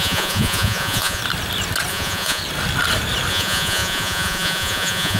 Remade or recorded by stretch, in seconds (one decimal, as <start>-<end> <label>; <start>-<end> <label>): 0.0-1.2 remade; 1.2-1.9 recorded; 1.9-2.4 remade; 2.4-3.3 recorded; 3.3-5.2 remade